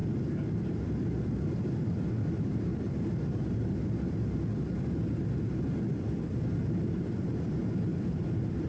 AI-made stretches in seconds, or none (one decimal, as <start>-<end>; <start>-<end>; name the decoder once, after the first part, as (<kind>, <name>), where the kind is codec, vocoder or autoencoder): 0.5-2.7 (vocoder, BigVGAN v2); 3.7-8.7